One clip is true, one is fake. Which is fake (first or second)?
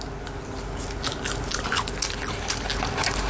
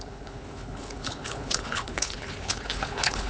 second